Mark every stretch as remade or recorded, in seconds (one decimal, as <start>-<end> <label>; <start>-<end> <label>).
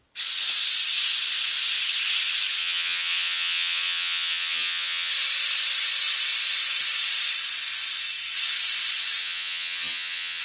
0.0-2.6 recorded; 2.6-5.1 remade; 5.1-9.2 recorded; 9.2-10.4 remade